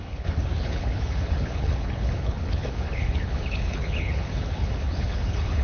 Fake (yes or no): yes